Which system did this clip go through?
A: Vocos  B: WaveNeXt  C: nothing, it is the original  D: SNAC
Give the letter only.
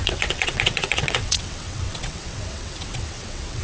B